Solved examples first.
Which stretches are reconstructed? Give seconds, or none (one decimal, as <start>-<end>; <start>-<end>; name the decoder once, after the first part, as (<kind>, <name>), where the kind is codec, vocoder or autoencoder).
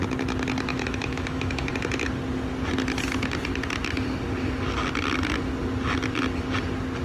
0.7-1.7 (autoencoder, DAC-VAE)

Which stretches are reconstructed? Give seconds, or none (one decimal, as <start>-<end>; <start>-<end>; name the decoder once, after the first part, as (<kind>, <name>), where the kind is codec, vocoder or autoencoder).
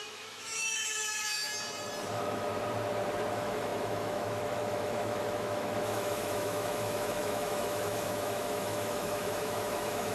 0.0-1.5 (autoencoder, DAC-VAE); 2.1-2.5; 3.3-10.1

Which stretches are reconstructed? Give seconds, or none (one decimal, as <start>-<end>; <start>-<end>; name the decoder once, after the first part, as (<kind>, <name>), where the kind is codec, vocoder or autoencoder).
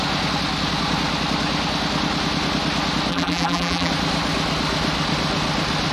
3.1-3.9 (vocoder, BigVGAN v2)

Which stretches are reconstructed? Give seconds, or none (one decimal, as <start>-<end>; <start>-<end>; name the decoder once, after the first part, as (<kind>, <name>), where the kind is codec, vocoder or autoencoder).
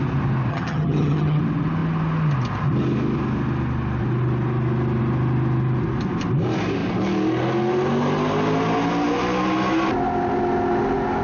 0.5-1.4 (vocoder, HiFi-GAN)